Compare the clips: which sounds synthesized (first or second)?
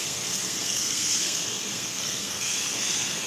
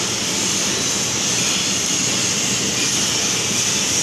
first